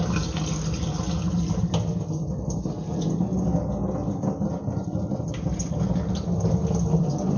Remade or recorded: recorded